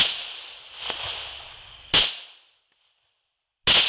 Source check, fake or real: real